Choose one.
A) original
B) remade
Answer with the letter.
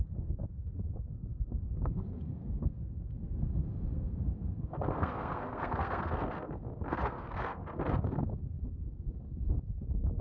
B